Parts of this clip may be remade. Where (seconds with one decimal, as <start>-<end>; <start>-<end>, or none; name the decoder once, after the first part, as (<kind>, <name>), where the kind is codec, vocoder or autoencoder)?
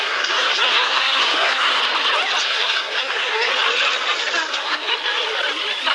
0.0-1.8 (codec, SNAC); 2.4-3.5; 4.5-4.9